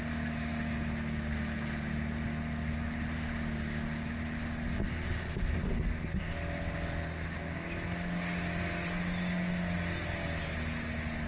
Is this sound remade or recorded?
recorded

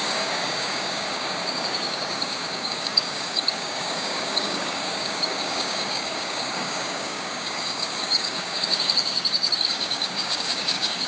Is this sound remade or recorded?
remade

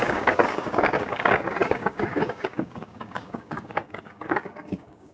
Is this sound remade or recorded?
remade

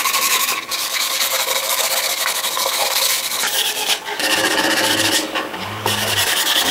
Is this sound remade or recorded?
remade